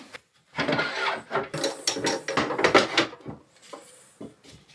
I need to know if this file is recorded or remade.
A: recorded